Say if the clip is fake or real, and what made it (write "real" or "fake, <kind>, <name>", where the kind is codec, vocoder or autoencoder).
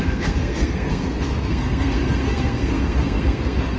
fake, codec, SNAC